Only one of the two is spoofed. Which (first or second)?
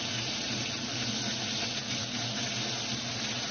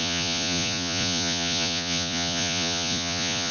second